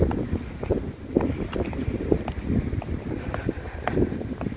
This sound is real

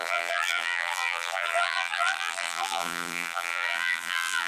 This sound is fake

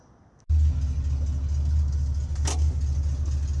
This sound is real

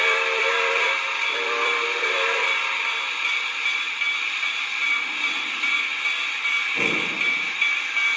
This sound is fake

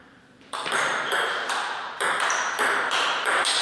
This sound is fake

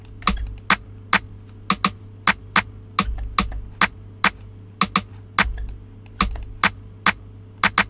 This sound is real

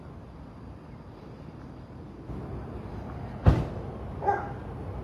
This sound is real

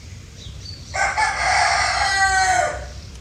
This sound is real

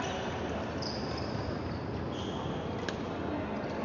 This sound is real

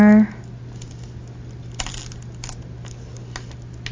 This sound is real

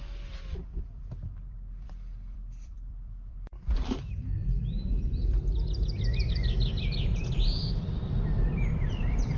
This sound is fake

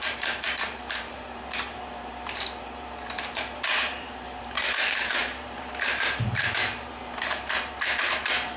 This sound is fake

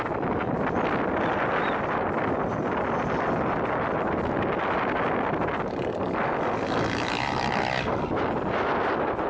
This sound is real